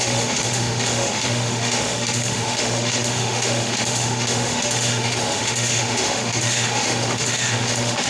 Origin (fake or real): fake